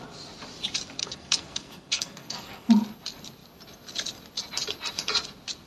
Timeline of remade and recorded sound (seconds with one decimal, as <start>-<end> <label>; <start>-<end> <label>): 0.0-1.0 recorded; 1.0-2.7 remade; 2.7-5.7 recorded